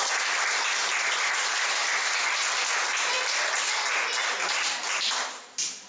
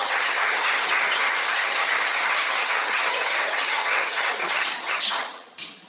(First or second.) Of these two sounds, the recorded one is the first